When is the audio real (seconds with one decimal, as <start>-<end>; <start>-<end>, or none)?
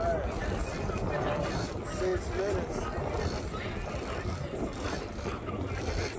0.0-6.2